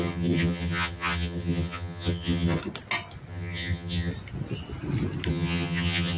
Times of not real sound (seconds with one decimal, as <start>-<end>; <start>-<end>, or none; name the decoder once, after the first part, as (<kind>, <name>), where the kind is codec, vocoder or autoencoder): 0.0-2.6 (vocoder, HiFi-GAN); 3.3-4.1; 5.3-6.2